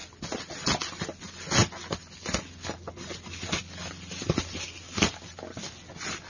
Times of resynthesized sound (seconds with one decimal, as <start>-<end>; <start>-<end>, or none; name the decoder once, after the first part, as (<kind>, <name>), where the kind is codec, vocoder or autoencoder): none